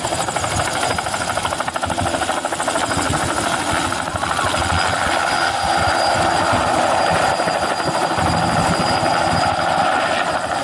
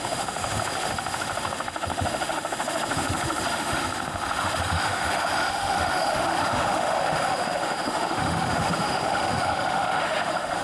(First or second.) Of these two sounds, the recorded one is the first